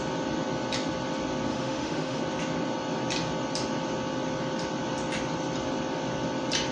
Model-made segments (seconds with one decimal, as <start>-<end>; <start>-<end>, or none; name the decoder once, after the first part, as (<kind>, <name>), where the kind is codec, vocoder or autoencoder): 1.5-2.2 (autoencoder, DAC-VAE)